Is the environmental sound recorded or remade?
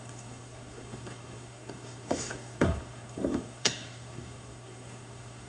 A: remade